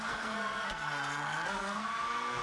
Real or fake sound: fake